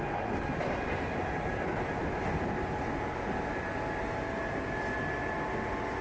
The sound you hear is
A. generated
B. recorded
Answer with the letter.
B